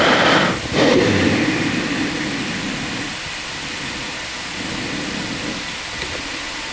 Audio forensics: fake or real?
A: real